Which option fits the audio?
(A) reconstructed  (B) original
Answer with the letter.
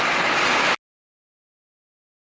B